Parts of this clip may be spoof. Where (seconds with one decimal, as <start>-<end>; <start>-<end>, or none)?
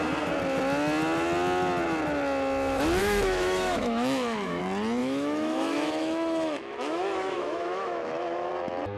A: 3.0-4.6; 5.0-8.5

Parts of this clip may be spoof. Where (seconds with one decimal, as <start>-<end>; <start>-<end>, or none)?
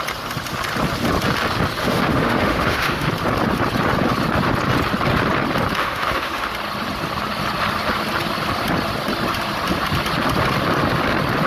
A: 1.8-3.1; 5.8-6.5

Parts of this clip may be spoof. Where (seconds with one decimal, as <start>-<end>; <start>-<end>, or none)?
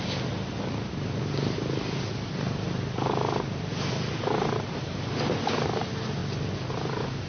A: none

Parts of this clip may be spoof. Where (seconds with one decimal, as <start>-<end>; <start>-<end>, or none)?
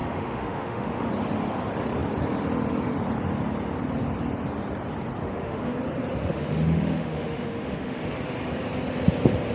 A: 0.0-1.1; 5.2-5.8; 6.3-8.0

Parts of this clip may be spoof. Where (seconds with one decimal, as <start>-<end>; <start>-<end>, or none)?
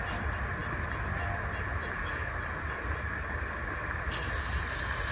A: none